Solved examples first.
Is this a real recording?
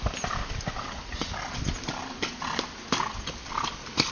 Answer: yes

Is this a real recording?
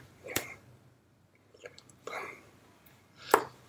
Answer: no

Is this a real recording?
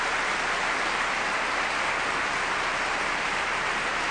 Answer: no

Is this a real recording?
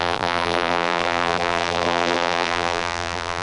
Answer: no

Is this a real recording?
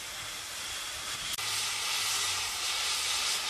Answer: no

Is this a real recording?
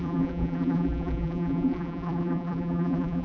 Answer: no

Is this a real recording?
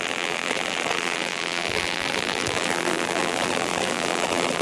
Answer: no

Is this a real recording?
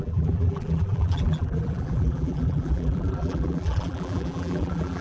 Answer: no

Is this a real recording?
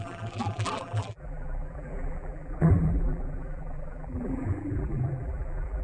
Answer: no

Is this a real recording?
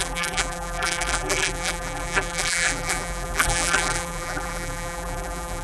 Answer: no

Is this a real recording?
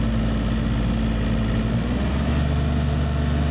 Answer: yes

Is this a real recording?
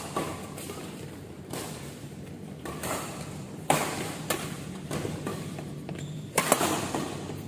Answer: no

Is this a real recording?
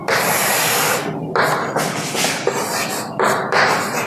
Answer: yes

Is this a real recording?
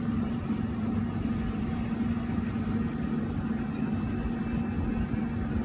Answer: yes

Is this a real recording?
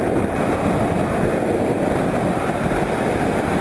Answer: yes